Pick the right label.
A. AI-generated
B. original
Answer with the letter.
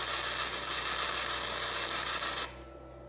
B